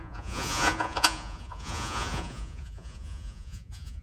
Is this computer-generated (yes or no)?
yes